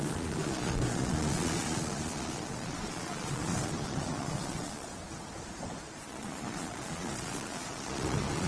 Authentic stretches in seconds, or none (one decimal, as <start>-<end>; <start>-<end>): 4.9-6.0